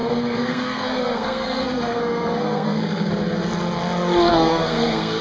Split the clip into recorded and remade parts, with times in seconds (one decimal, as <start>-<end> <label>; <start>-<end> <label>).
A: 0.0-3.1 remade; 3.1-4.3 recorded; 4.3-5.2 remade